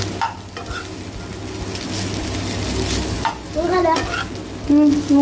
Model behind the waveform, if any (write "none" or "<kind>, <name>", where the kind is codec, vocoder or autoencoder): none